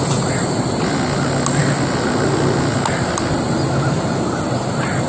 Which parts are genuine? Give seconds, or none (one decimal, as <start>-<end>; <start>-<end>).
0.0-5.1

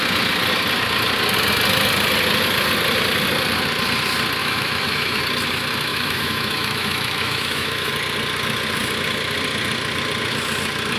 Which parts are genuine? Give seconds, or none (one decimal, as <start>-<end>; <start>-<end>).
0.0-4.4; 5.2-5.9; 7.9-11.0

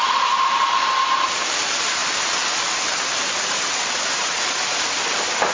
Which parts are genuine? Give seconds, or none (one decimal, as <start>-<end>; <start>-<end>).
2.0-3.2

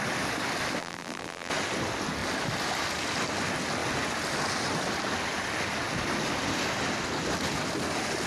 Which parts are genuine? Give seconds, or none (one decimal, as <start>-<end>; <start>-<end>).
0.0-0.8; 1.5-8.3

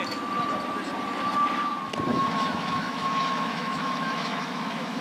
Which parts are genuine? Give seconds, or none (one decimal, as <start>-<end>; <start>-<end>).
0.0-2.1

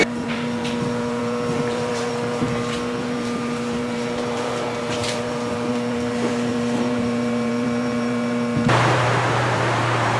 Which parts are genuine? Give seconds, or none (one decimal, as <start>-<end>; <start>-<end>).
none